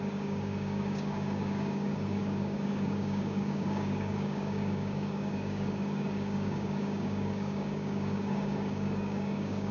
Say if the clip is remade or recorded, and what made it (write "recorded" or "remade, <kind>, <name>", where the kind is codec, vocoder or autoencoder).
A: remade, codec, DAC